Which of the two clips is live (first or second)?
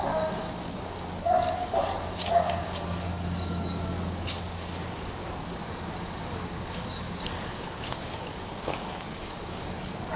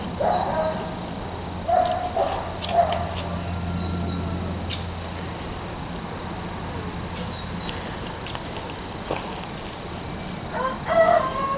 second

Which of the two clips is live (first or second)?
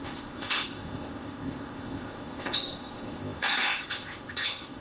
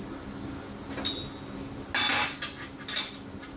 second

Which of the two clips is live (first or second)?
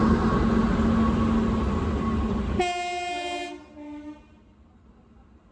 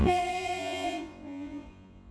first